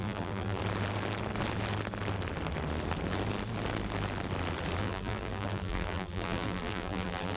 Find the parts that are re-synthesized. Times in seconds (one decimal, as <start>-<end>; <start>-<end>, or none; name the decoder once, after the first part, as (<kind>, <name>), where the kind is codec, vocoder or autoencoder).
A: 0.0-0.6 (vocoder, BigVGAN v2); 4.8-7.4